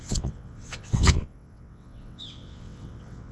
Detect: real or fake fake